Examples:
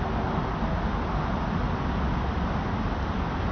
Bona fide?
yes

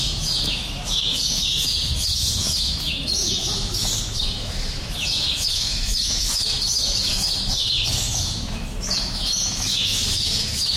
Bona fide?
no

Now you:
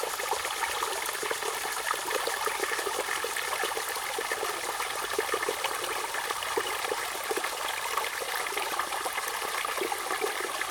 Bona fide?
yes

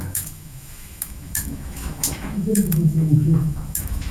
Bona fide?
no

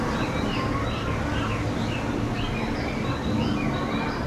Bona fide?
yes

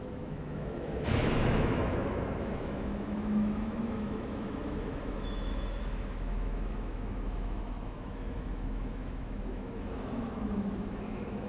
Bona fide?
no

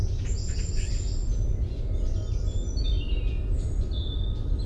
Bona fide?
yes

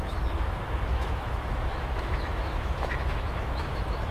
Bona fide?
no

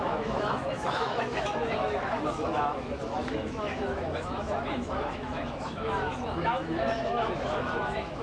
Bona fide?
no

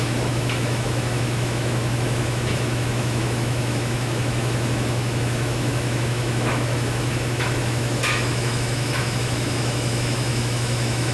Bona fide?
no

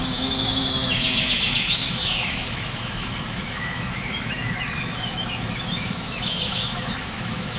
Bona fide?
no